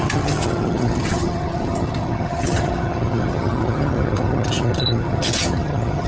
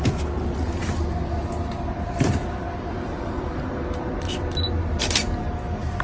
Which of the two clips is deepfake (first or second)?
first